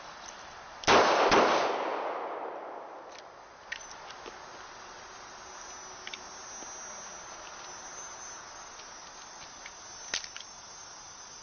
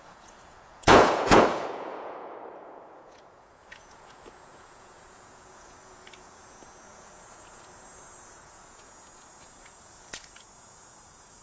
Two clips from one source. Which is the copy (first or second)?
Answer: second